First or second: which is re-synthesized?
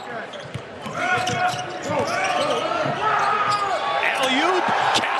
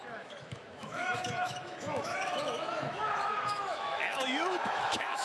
second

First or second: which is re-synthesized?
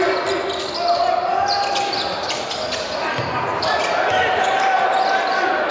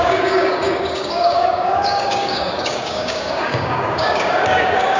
second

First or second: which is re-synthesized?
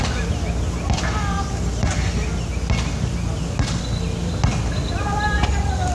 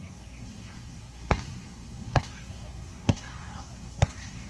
second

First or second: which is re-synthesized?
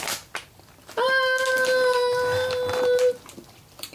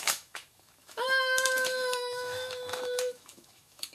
second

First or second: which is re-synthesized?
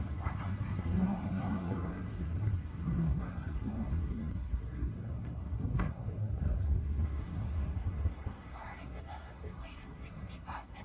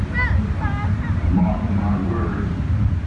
first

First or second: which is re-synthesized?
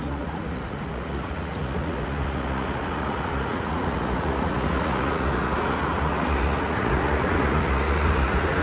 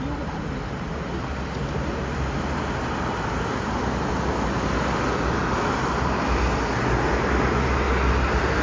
first